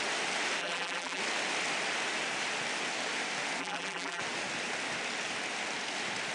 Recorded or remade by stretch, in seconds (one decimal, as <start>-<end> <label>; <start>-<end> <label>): 0.0-0.6 recorded; 0.6-1.2 remade; 1.2-3.6 recorded; 3.6-4.2 remade; 4.2-6.3 recorded